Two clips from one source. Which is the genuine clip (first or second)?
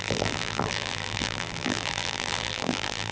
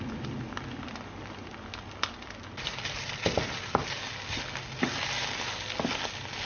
second